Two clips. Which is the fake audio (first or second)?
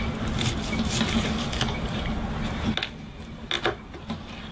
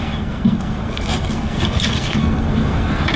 second